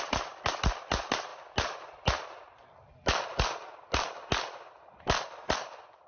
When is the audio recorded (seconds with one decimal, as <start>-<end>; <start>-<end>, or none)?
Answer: 0.0-6.1